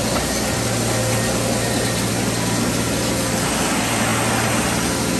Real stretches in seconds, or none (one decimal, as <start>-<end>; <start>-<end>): 0.0-5.2